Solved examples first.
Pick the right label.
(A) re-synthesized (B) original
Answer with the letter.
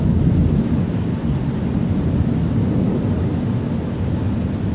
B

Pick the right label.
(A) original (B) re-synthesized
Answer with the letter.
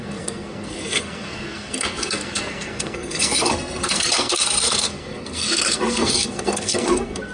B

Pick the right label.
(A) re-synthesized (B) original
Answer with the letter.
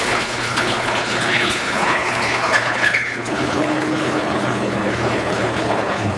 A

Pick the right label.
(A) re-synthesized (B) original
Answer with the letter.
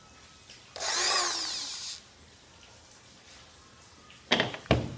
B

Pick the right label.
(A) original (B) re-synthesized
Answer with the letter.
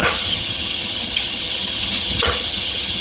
B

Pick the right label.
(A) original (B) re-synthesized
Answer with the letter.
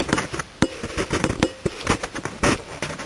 B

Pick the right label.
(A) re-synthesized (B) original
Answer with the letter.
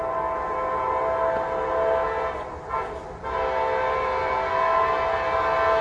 B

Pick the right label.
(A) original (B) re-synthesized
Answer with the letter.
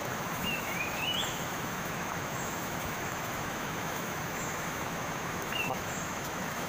B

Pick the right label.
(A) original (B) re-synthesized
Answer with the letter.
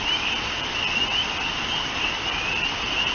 A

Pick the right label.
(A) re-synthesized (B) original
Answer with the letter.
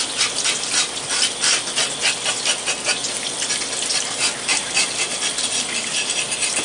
B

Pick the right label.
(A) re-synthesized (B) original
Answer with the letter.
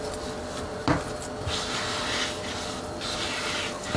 B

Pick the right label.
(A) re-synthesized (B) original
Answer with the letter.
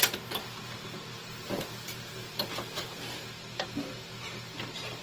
A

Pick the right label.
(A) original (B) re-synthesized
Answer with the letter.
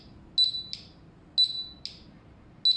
A